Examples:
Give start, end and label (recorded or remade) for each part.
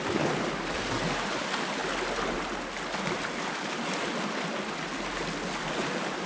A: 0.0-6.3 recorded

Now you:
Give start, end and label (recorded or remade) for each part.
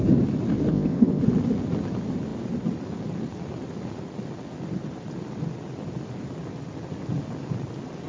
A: 0.0-0.7 recorded; 0.7-1.2 remade; 1.2-8.1 recorded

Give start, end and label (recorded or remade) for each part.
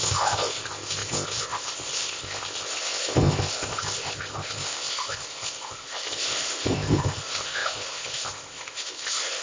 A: 0.0-9.4 remade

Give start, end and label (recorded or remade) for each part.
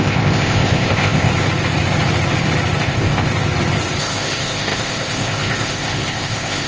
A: 0.0-1.3 remade; 1.3-2.8 recorded; 2.8-3.3 remade; 3.3-4.0 recorded; 4.0-6.7 remade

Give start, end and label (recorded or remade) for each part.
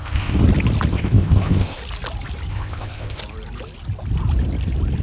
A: 0.0-0.4 remade; 0.4-0.9 recorded; 0.9-1.8 remade; 1.8-2.5 recorded; 2.5-3.2 remade; 3.2-5.0 recorded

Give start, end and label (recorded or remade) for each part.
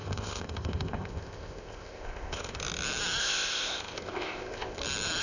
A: 0.0-2.6 remade; 2.6-3.2 recorded; 3.2-4.8 remade; 4.8-5.2 recorded